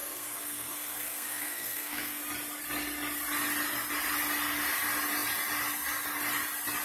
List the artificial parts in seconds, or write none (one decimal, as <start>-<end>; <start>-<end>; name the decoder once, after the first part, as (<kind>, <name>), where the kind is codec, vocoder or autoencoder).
0.0-2.2 (codec, SNAC)